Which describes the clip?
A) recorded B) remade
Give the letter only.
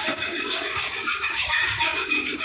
B